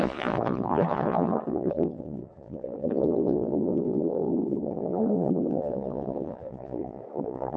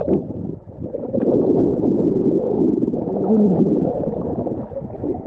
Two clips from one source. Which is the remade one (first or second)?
first